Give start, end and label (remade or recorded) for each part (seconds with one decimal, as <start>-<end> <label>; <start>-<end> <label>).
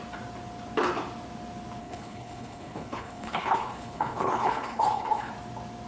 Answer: 0.0-1.8 recorded; 1.8-5.3 remade; 5.3-5.9 recorded